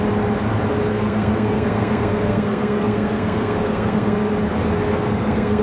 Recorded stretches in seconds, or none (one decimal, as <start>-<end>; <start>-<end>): 0.0-0.9; 4.3-4.9